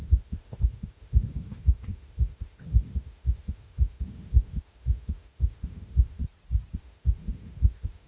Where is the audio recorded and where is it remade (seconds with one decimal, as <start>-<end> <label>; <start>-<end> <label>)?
0.0-6.2 remade; 6.2-6.8 recorded; 6.8-8.1 remade